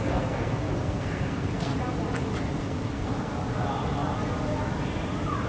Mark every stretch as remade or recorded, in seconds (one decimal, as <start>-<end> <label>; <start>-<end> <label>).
0.0-1.7 remade; 1.7-2.6 recorded; 2.6-3.3 remade; 3.3-5.5 recorded